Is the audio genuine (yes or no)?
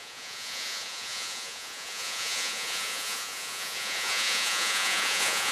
no